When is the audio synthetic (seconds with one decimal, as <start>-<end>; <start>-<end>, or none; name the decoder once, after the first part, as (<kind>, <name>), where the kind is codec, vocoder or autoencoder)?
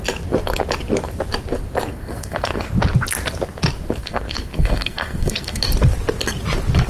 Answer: 1.9-2.7 (codec, SNAC); 4.0-5.6